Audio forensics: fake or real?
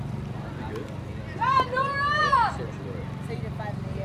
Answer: real